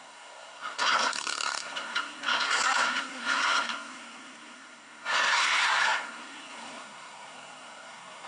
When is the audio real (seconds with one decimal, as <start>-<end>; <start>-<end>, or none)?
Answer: none